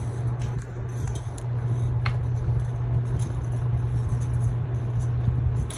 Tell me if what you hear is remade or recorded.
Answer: recorded